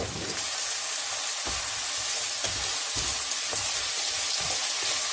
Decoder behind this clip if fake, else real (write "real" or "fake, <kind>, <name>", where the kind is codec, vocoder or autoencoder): real